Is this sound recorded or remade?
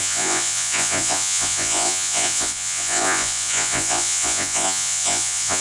remade